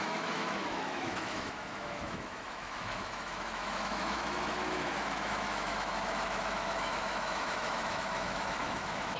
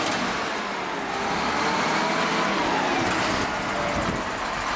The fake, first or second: first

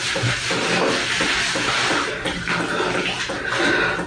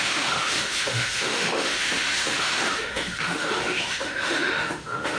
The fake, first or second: second